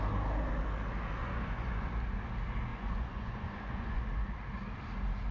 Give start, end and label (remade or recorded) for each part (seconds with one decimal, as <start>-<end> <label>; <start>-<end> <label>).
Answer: 0.0-1.2 recorded; 1.2-1.9 remade; 1.9-2.7 recorded; 2.7-4.0 remade; 4.0-5.3 recorded

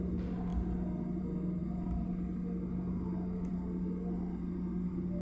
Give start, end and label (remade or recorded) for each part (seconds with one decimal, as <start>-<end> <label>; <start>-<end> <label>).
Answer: 0.0-5.2 recorded